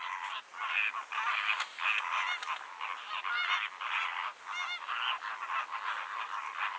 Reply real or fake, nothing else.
real